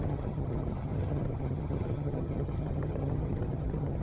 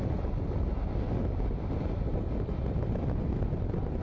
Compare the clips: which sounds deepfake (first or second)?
first